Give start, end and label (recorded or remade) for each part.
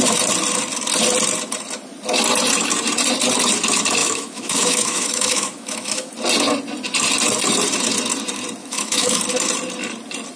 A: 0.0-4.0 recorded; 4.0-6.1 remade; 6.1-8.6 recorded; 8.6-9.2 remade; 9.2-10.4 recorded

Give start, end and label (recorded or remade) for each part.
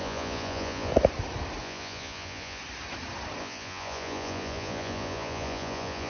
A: 0.0-0.9 remade; 0.9-1.6 recorded; 1.6-2.6 remade; 2.6-3.4 recorded; 3.4-6.1 remade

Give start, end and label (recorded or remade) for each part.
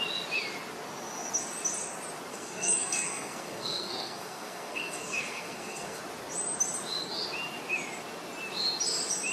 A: 0.0-2.3 recorded; 2.3-6.0 remade; 6.0-9.3 recorded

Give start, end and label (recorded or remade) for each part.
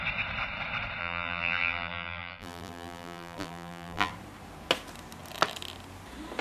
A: 0.0-1.0 recorded; 1.0-4.1 remade; 4.1-6.4 recorded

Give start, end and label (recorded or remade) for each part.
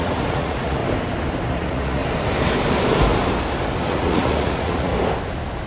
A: 0.0-0.8 remade; 0.8-1.5 recorded; 1.5-2.0 remade; 2.0-3.9 recorded; 3.9-4.9 remade; 4.9-5.7 recorded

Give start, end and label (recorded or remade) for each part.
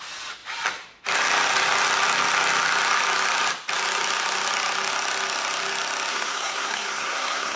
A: 0.0-6.1 recorded; 6.1-7.6 remade